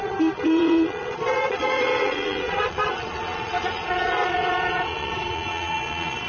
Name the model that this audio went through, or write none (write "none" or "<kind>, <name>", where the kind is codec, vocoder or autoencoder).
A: vocoder, Vocos